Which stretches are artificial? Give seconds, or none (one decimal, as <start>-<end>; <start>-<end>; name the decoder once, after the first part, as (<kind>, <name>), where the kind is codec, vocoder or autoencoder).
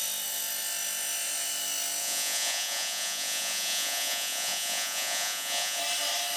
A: 2.0-5.8 (vocoder, Vocos)